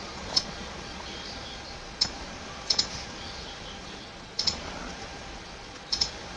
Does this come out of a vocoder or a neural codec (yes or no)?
yes